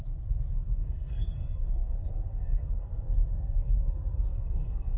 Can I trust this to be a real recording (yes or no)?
no